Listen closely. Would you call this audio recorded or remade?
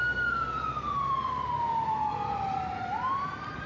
recorded